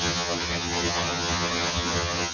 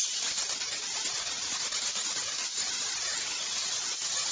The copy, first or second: first